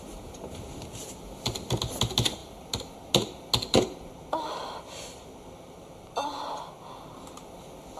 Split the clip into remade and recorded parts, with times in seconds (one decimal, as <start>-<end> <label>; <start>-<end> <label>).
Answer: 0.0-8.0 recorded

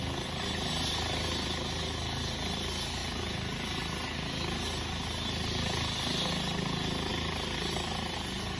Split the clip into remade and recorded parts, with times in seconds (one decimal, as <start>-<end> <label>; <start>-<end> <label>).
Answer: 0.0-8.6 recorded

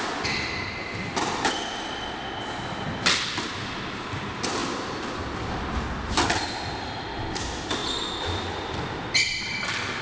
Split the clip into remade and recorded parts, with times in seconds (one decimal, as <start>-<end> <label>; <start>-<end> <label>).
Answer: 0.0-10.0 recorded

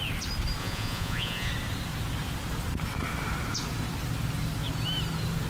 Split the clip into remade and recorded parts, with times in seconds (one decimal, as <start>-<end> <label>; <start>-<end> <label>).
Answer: 0.0-0.6 recorded; 0.6-1.5 remade; 1.5-5.5 recorded

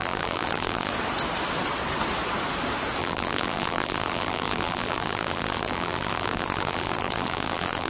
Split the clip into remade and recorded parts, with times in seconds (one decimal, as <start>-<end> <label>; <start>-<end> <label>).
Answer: 0.0-0.9 remade; 0.9-3.0 recorded; 3.0-7.9 remade